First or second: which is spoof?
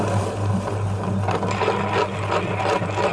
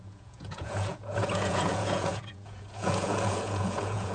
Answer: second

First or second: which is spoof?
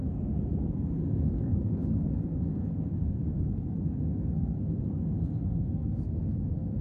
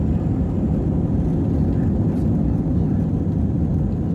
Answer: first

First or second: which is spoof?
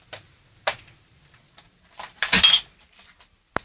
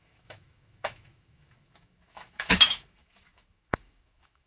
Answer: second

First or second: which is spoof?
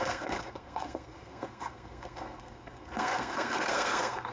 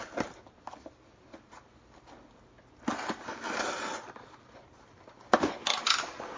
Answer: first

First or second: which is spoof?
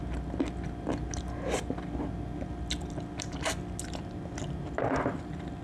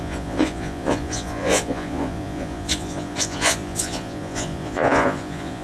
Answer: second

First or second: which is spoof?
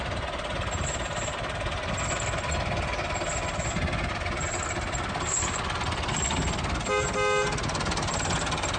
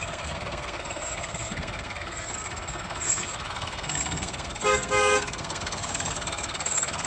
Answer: second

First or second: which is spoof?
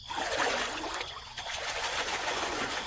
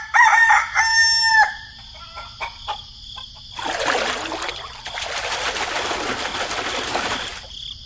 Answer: first